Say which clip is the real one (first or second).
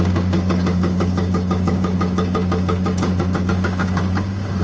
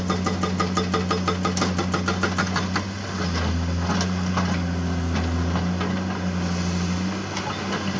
second